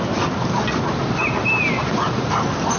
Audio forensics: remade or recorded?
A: recorded